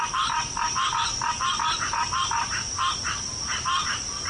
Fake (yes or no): no